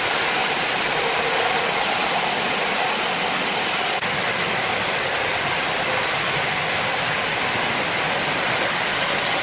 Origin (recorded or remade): recorded